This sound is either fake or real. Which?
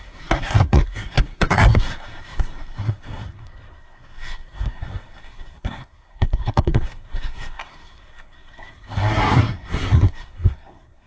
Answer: fake